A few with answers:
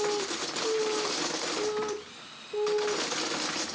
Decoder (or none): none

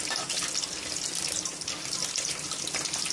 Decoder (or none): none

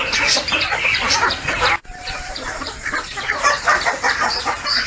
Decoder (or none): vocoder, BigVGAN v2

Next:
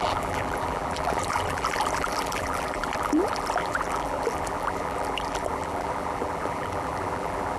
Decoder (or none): vocoder, BigVGAN v2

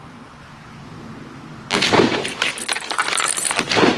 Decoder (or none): none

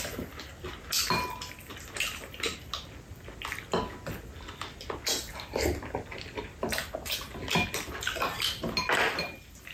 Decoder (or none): none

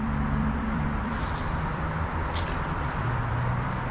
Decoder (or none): vocoder, BigVGAN v2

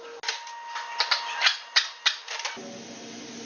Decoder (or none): none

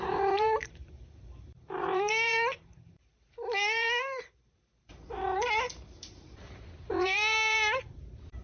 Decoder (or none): vocoder, BigVGAN v2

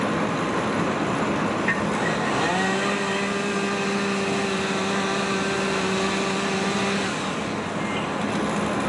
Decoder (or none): none